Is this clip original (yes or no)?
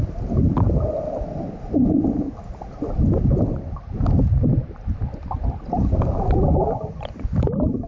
no